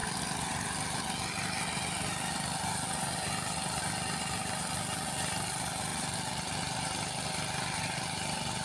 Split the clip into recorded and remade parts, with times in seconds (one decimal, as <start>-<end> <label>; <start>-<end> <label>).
0.0-8.6 recorded